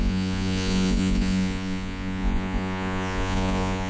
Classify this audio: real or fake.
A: fake